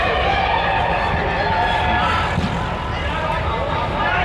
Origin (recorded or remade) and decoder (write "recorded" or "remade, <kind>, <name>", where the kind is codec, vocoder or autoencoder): recorded